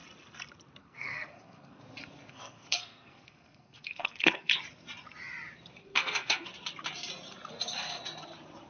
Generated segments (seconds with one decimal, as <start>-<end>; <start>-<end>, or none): 0.8-1.8; 2.3-4.5; 5.8-6.5